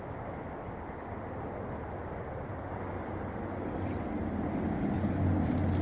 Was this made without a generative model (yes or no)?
yes